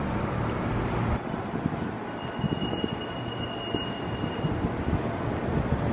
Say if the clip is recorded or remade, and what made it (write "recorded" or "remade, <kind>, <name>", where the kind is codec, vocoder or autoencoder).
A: recorded